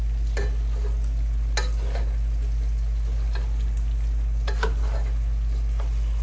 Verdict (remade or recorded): recorded